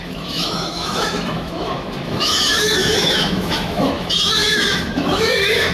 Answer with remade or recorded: remade